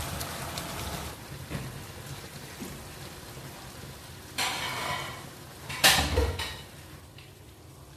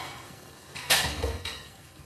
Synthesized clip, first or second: second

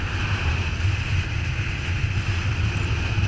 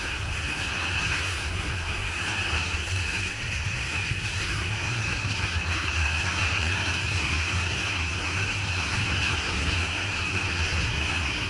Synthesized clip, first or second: second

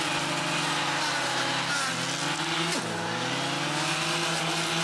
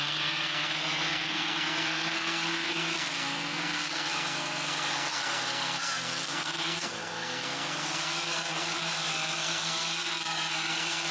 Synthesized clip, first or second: second